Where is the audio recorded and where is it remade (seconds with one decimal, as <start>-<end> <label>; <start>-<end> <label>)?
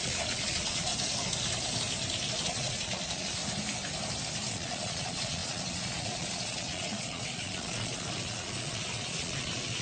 0.0-0.9 remade; 0.9-2.4 recorded; 2.4-3.4 remade; 3.4-4.5 recorded; 4.5-9.8 remade